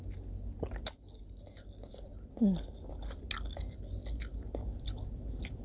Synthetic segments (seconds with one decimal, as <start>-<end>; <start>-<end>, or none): none